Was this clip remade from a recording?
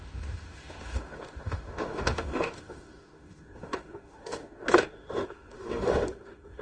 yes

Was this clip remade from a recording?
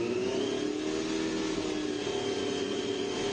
no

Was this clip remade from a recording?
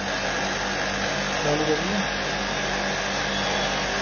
no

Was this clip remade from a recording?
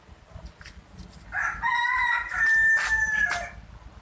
no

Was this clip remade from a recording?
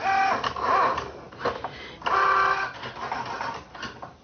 no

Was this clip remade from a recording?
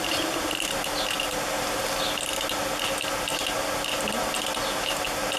no